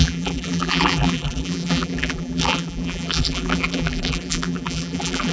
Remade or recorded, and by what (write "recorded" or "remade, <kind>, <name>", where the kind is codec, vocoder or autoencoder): remade, vocoder, BigVGAN v2